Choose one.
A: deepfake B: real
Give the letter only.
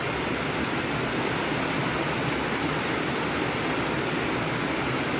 B